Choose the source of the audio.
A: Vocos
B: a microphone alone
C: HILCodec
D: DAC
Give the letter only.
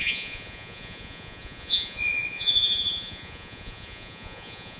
A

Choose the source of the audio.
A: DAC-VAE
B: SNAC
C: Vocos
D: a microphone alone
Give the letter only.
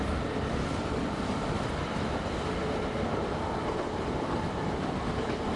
D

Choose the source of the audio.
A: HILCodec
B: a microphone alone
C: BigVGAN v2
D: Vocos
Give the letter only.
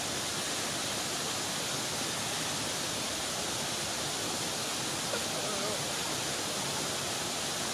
B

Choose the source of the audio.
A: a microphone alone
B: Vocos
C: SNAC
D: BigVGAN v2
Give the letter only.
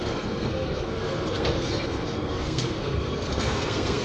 C